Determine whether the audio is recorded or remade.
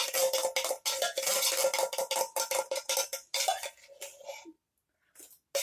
recorded